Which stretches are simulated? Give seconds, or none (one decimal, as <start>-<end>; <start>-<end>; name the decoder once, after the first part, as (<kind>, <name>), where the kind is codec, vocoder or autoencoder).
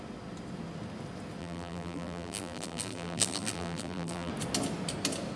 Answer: 1.4-4.3 (vocoder, BigVGAN v2)